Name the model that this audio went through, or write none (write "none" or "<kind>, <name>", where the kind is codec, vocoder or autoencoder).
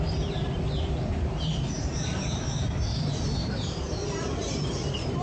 vocoder, BigVGAN v2